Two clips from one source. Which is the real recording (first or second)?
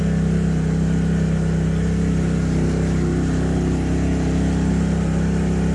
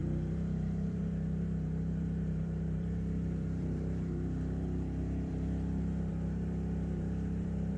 first